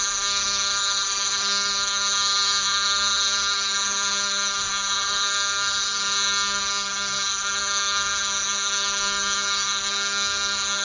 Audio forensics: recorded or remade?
remade